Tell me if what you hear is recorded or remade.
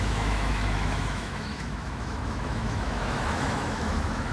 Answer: remade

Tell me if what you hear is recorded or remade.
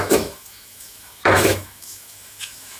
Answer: remade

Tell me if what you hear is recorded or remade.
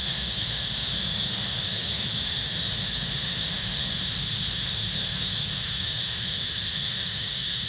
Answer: remade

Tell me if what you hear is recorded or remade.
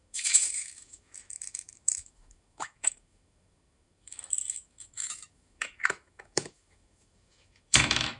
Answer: remade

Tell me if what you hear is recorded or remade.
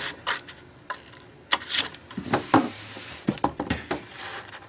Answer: recorded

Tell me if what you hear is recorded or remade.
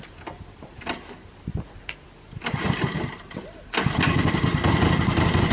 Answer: recorded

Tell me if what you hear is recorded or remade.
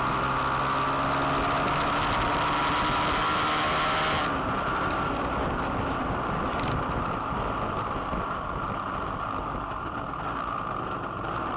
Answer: recorded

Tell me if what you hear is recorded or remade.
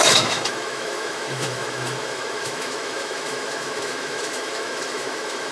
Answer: remade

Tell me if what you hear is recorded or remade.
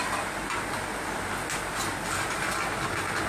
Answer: recorded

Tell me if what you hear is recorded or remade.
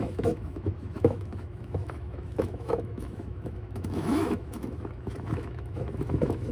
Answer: remade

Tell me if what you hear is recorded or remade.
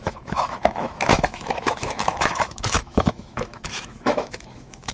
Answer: remade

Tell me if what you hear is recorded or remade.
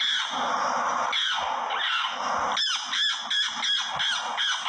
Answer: recorded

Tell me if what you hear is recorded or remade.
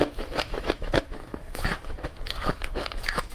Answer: remade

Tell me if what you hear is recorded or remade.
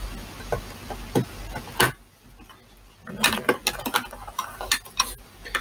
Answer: recorded